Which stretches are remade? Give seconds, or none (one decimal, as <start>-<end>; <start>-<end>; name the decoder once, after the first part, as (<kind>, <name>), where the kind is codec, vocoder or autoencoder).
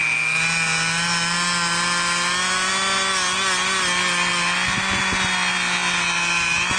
none